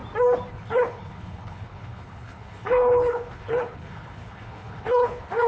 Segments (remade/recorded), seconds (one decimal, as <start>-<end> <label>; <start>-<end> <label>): 0.0-0.5 recorded; 0.5-5.5 remade

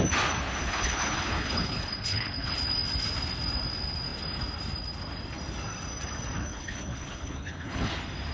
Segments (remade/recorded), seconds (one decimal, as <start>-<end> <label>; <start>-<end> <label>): 0.0-0.6 recorded; 0.6-2.5 remade; 2.5-6.4 recorded; 6.4-7.9 remade; 7.9-8.3 recorded

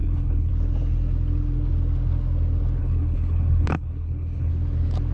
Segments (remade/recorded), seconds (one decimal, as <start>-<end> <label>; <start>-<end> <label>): 0.0-0.5 remade; 0.5-2.8 recorded; 2.8-4.5 remade; 4.5-5.1 recorded

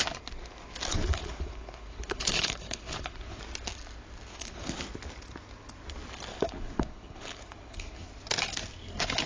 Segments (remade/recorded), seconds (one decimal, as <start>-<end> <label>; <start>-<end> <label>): 0.0-0.9 recorded; 0.9-3.4 remade; 3.4-4.3 recorded; 4.3-4.8 remade; 4.8-6.3 recorded; 6.3-8.1 remade; 8.1-9.3 recorded

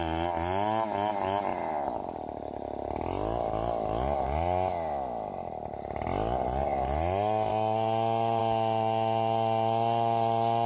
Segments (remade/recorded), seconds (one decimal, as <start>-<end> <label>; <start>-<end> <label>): 0.0-10.7 recorded

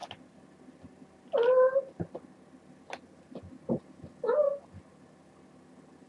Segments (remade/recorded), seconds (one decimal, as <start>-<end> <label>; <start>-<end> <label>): 0.0-6.1 recorded